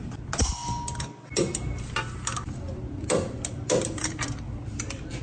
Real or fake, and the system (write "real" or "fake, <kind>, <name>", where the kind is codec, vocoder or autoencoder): real